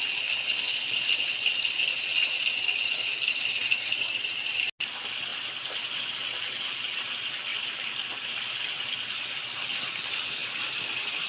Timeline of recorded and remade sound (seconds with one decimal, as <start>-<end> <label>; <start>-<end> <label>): 0.0-3.6 recorded; 3.6-4.5 remade; 4.5-5.3 recorded; 5.3-6.6 remade; 6.6-7.5 recorded; 7.5-9.2 remade; 9.2-10.4 recorded; 10.4-11.3 remade